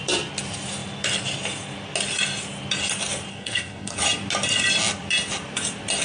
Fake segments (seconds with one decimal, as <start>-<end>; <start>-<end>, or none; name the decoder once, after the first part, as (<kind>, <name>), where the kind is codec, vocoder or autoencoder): 3.3-4.0 (codec, SNAC)